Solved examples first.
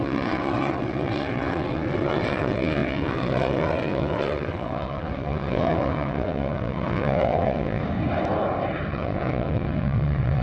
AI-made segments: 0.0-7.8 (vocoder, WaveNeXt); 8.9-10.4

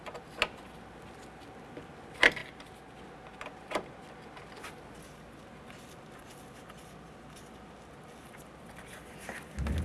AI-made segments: none

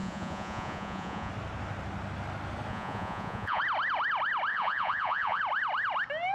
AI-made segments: 0.0-1.3 (vocoder, Vocos); 2.7-3.6; 4.5-5.4